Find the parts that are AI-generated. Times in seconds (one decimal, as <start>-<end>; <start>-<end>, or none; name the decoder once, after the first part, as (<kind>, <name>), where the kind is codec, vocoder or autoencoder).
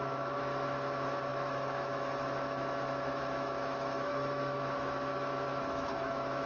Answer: 0.0-6.5 (autoencoder, DAC-VAE)